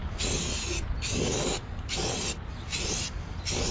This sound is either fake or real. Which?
real